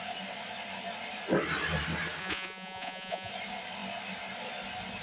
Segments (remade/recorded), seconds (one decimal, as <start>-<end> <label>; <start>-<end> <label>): 0.0-2.2 recorded; 2.2-3.3 remade; 3.3-5.0 recorded